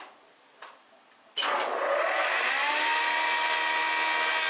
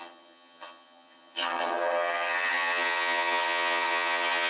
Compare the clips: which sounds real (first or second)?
first